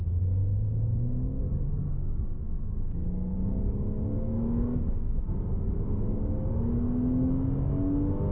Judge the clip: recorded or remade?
recorded